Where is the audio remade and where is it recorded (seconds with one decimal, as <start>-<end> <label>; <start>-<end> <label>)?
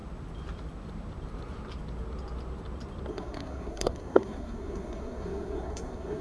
0.0-3.1 recorded; 3.1-6.2 remade